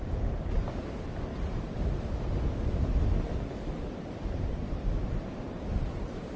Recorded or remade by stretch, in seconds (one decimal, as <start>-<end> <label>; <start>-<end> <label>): 0.0-6.4 recorded